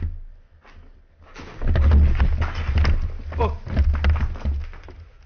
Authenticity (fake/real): real